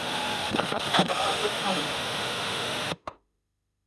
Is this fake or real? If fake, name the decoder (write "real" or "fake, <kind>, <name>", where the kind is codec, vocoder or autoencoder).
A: fake, autoencoder, DAC-VAE